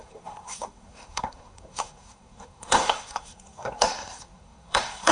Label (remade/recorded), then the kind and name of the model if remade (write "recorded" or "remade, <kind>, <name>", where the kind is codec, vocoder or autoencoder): remade, codec, SNAC